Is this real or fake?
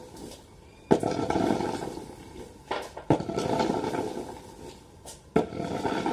real